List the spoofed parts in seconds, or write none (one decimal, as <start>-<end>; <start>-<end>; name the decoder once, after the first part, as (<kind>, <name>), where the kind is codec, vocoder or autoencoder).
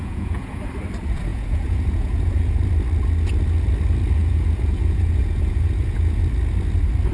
0.0-0.6 (vocoder, Vocos); 1.3-2.6; 4.2-6.2